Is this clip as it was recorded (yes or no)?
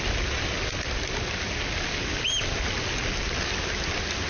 yes